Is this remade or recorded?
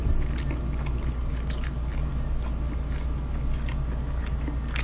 recorded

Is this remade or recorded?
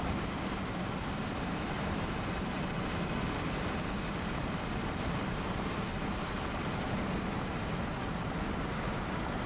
recorded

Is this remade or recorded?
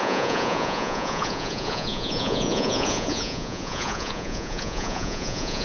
remade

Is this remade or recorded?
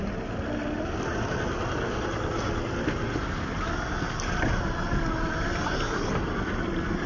recorded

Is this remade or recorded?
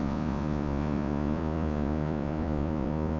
remade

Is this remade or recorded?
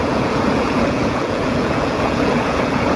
remade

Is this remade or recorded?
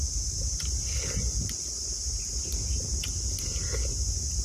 recorded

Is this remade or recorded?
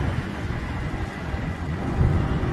remade